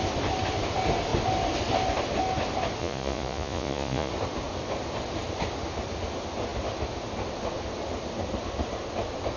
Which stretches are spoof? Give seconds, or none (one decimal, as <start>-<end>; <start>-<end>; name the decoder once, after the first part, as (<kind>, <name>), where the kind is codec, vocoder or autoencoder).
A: 2.8-4.1 (vocoder, Vocos)